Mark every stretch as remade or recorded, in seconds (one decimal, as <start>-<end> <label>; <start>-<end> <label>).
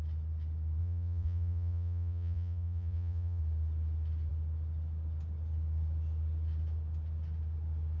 0.0-0.8 recorded; 0.8-3.4 remade; 3.4-8.0 recorded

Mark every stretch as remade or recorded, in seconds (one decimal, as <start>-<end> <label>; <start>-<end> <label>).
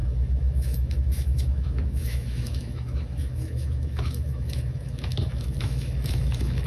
0.0-6.7 remade